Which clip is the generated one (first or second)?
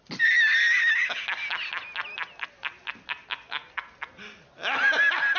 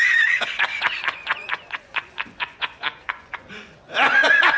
second